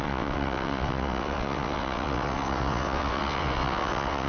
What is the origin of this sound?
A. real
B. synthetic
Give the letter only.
B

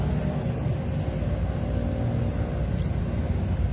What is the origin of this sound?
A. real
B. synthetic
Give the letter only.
A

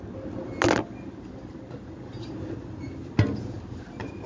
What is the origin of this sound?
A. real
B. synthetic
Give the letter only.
A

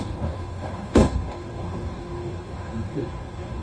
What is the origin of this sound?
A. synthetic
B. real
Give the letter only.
A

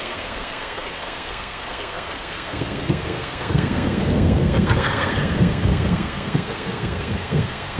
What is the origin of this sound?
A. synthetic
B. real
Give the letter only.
A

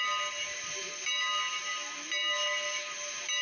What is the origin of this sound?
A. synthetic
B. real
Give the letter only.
B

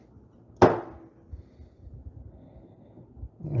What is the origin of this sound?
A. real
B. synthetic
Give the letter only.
A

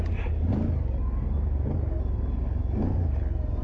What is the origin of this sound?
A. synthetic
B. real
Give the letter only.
B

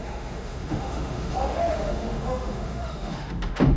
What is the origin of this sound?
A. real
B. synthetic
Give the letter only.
B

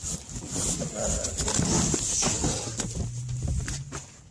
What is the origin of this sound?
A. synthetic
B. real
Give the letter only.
B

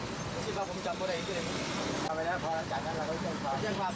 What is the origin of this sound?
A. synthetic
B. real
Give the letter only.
B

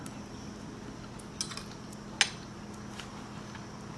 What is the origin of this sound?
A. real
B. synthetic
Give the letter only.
A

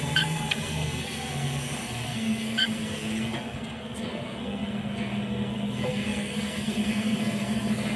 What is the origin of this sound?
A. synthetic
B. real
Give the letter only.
A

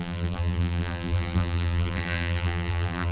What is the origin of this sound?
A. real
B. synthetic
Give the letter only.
B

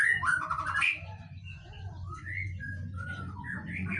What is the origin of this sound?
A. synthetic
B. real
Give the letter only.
A